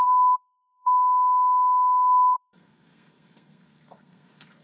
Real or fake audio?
fake